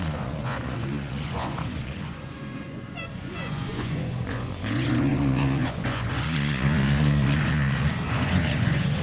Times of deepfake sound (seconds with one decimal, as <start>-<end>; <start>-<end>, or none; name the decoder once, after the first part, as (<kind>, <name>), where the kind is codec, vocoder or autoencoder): 0.0-9.0 (vocoder, Vocos)